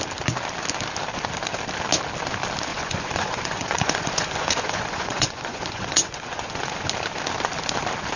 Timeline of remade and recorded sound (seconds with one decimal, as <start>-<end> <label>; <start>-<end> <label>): 0.0-2.7 recorded; 2.7-6.9 remade; 6.9-8.2 recorded

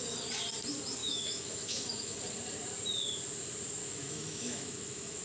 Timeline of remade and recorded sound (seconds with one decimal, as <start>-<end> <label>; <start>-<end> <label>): 0.0-1.0 recorded; 1.0-2.2 remade; 2.2-3.8 recorded; 3.8-5.2 remade